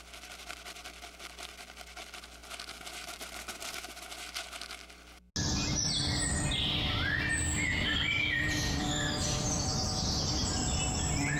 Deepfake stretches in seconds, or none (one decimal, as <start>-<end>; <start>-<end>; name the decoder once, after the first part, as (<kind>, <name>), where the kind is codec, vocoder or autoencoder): none

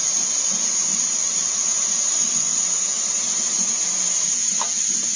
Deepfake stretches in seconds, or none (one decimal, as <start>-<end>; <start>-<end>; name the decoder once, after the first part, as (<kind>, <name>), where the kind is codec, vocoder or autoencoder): none

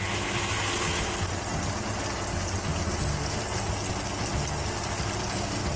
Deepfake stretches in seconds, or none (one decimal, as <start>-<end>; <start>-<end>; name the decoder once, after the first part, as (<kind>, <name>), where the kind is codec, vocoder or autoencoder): none

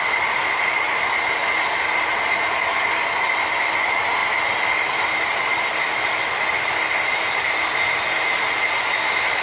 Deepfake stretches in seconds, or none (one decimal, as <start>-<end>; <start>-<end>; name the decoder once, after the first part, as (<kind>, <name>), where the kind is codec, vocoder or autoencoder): none

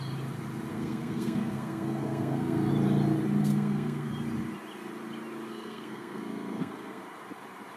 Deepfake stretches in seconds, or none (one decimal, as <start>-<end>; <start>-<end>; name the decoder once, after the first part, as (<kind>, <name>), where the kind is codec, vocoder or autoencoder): 0.7-2.7 (codec, SNAC); 3.4-4.1; 5.5-7.0

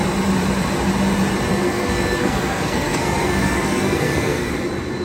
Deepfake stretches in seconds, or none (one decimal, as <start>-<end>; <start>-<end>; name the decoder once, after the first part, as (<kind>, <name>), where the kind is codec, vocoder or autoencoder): 1.5-4.5 (codec, SNAC)